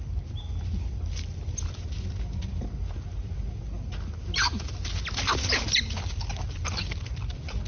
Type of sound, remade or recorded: recorded